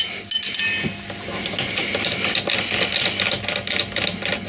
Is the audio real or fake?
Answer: real